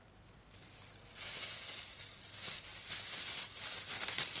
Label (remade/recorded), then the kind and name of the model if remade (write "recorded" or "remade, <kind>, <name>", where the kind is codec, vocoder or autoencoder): recorded